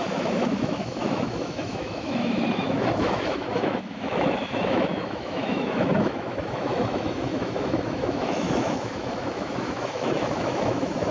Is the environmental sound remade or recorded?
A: remade